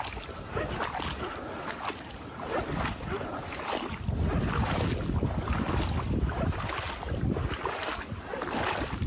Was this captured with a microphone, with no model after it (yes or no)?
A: yes